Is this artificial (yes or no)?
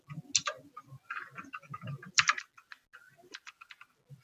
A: no